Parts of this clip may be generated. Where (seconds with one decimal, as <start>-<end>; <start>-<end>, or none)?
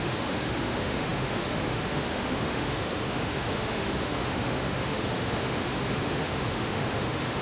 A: 0.0-7.4